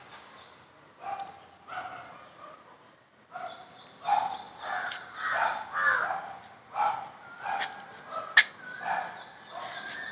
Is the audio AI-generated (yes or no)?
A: no